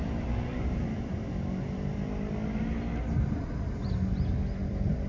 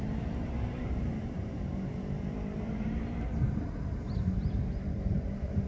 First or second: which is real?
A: first